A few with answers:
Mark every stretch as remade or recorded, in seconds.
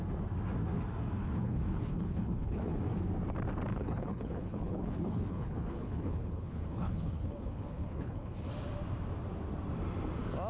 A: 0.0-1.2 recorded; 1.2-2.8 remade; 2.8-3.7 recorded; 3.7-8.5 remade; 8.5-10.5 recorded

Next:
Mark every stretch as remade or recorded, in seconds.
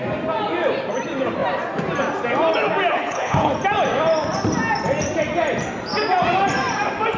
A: 0.0-2.9 recorded; 2.9-3.5 remade; 3.5-7.2 recorded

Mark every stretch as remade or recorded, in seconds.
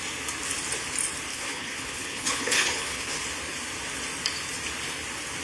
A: 0.0-1.3 recorded; 1.3-3.2 remade; 3.2-5.4 recorded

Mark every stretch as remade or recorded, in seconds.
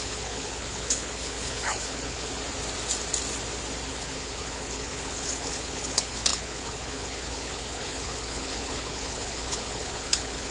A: 0.0-2.3 remade; 2.3-3.9 recorded; 3.9-10.5 remade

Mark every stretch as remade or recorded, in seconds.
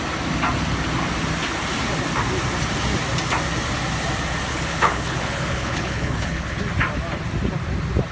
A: 0.0-4.5 recorded; 4.5-6.6 remade; 6.6-8.1 recorded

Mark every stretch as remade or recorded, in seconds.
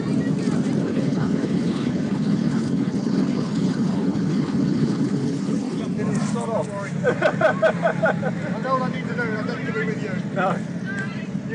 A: 0.0-0.8 recorded; 0.8-5.8 remade; 5.8-11.5 recorded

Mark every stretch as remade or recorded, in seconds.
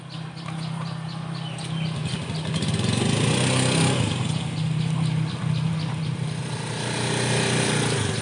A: 0.0-8.2 recorded